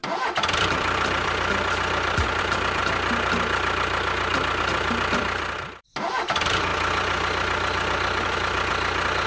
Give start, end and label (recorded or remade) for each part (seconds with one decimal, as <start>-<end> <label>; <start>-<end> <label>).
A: 0.0-2.8 remade; 2.8-4.6 recorded; 4.6-6.7 remade; 6.7-9.3 recorded